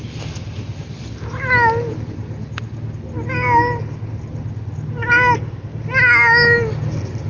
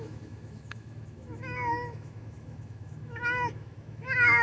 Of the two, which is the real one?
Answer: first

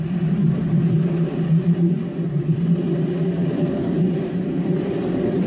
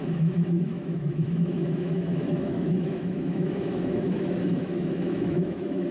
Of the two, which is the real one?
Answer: first